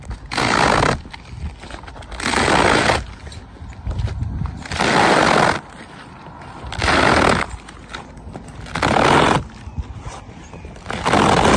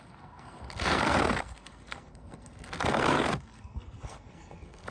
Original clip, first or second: first